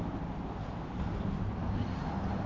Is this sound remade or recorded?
recorded